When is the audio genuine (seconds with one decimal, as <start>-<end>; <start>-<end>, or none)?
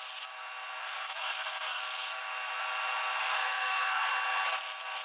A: 0.0-0.8; 1.8-3.2; 4.1-5.0